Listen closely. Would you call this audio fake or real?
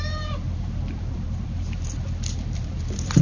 fake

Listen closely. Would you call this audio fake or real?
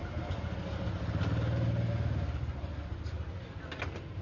real